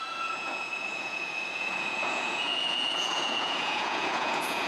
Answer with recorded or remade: remade